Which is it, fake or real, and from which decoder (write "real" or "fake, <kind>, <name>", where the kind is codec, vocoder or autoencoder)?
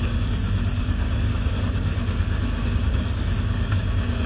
fake, codec, DAC